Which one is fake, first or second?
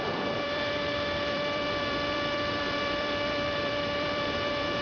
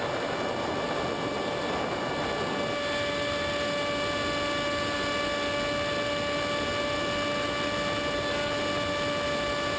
first